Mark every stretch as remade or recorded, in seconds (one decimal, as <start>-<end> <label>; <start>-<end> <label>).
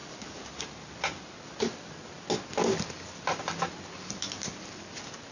0.0-5.3 recorded